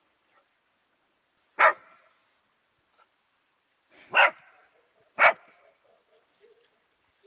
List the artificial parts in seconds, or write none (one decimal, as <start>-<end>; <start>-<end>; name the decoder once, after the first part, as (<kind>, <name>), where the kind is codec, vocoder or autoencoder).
0.0-0.8 (vocoder, BigVGAN v2); 3.2-7.3